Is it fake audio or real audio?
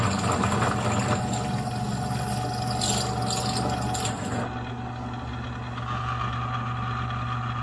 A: real